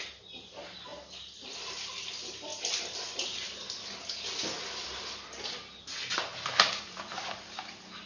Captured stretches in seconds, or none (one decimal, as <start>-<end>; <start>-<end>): 0.0-8.1